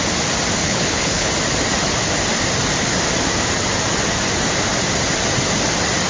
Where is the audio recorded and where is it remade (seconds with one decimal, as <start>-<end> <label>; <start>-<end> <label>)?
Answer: 0.0-0.6 recorded; 0.6-1.3 remade; 1.3-6.1 recorded